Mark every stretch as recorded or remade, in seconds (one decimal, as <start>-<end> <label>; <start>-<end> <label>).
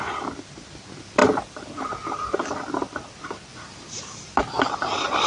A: 0.0-5.3 recorded